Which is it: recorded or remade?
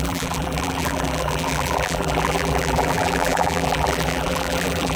remade